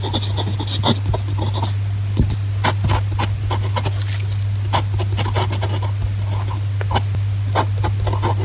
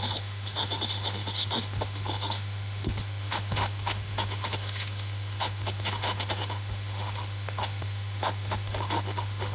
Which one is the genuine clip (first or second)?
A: first